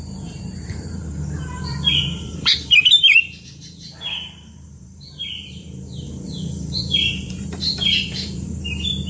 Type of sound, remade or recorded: remade